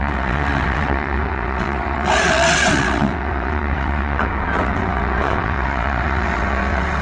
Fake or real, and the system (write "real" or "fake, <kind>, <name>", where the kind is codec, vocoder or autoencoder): fake, vocoder, WaveNeXt